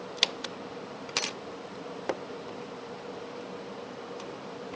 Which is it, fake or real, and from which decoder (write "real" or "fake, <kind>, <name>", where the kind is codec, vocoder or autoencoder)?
real